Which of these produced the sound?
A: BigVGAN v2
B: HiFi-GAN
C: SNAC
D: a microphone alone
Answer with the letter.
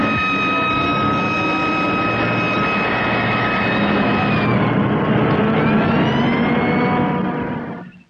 D